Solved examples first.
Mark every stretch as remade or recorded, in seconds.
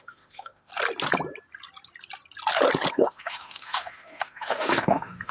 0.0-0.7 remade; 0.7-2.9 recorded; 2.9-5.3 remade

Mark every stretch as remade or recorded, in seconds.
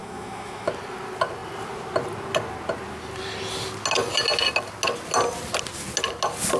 0.0-0.7 remade; 0.7-6.6 recorded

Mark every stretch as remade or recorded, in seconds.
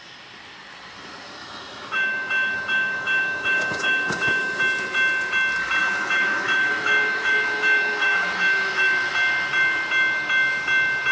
0.0-1.4 recorded; 1.4-4.6 remade; 4.6-5.8 recorded; 5.8-9.1 remade; 9.1-11.1 recorded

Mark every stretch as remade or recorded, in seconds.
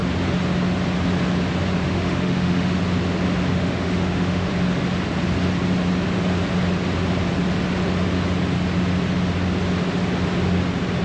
0.0-1.9 recorded; 1.9-2.8 remade; 2.8-3.5 recorded; 3.5-4.5 remade; 4.5-11.0 recorded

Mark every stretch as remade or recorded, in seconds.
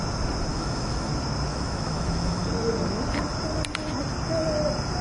0.0-0.5 recorded; 0.5-1.1 remade; 1.1-1.5 recorded; 1.5-2.5 remade; 2.5-5.0 recorded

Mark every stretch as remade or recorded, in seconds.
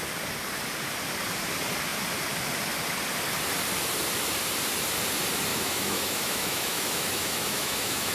0.0-5.5 recorded; 5.5-8.1 remade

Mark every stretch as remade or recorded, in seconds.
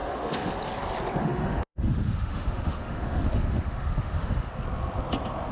0.0-0.5 remade; 0.5-1.2 recorded; 1.2-4.5 remade; 4.5-5.5 recorded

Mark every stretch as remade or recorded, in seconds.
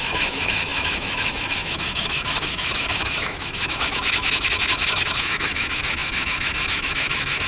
0.0-7.5 remade